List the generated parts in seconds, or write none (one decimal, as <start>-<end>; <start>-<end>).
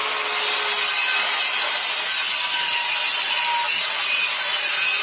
none